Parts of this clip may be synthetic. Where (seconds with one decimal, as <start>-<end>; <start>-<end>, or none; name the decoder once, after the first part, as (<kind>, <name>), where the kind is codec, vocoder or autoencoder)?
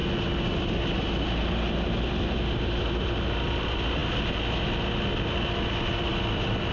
none